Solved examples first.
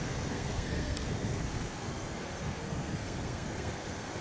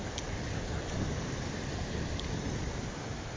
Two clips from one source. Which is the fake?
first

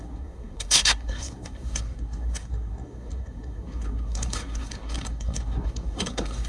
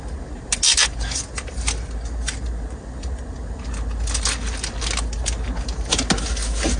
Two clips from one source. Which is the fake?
first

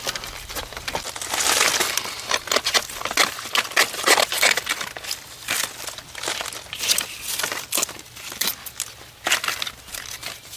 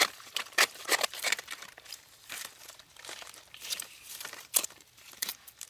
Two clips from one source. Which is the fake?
second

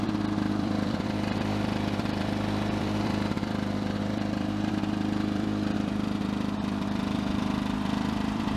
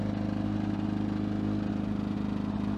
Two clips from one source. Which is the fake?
first